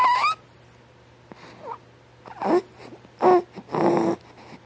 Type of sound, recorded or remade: recorded